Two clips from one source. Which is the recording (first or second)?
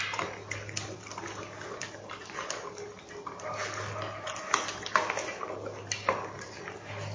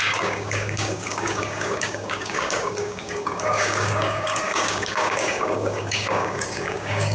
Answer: first